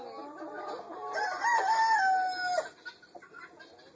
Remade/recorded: recorded